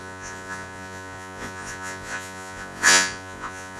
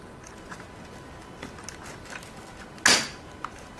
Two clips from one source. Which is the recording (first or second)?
second